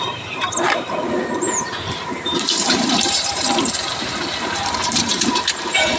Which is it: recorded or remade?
remade